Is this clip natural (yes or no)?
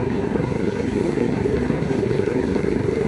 no